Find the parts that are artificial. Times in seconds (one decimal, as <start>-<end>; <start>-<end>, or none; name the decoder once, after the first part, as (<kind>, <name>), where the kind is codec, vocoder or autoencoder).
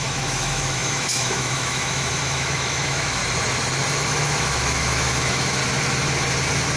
0.0-3.2 (autoencoder, DAC-VAE); 3.9-5.6